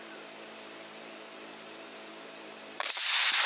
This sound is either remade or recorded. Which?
remade